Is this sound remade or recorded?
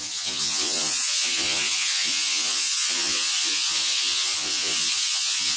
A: remade